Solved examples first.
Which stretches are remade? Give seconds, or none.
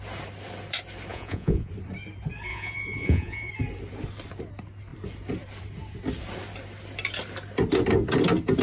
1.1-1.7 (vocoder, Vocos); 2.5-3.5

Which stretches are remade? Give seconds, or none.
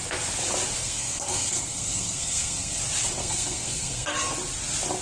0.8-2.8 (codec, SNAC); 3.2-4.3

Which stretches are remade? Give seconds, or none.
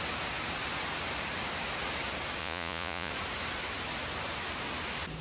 2.4-3.1 (vocoder, Vocos)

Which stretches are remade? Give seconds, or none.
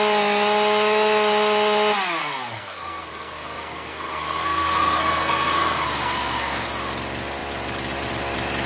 2.2-6.7 (codec, SNAC)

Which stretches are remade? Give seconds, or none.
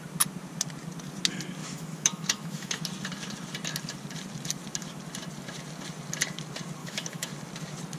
1.6-2.8 (autoencoder, DAC-VAE); 6.8-7.3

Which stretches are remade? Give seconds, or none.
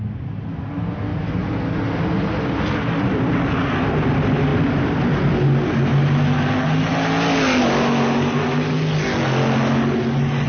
4.5-5.3 (vocoder, BigVGAN v2)